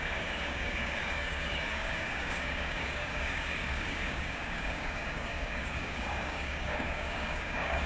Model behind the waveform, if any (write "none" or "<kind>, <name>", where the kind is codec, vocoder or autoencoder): codec, DAC